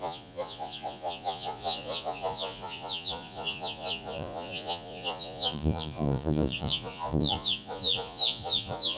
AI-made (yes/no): yes